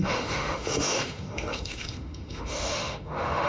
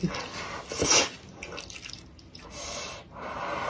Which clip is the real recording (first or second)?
second